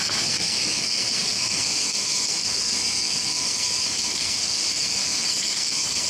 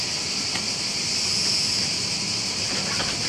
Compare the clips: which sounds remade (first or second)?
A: first